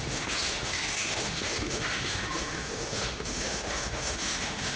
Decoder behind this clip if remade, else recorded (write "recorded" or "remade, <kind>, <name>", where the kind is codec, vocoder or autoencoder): remade, autoencoder, DAC-VAE